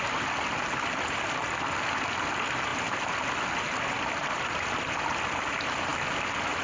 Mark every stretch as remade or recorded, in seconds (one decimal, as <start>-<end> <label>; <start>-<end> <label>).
0.0-6.6 recorded